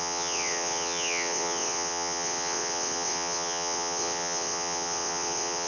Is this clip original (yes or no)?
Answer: no